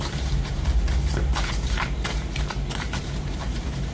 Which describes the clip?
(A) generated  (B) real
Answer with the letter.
A